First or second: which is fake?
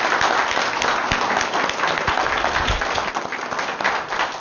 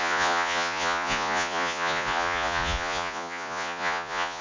second